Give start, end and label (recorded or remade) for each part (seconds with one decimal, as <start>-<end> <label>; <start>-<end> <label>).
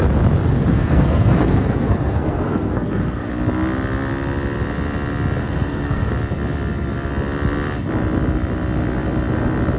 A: 0.0-0.7 recorded; 0.7-3.3 remade; 3.3-5.4 recorded; 5.4-6.1 remade; 6.1-9.8 recorded